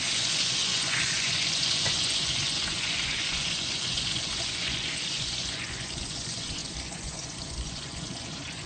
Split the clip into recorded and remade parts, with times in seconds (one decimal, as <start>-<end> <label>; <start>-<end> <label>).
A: 0.0-8.7 remade